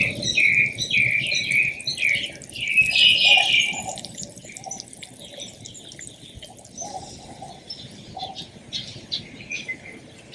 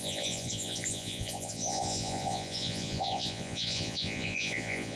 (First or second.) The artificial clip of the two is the second